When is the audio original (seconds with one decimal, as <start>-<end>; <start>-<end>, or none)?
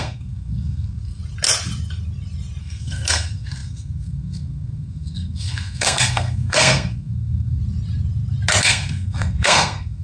1.2-2.6; 7.6-8.6